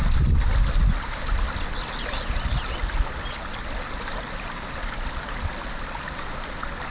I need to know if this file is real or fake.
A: real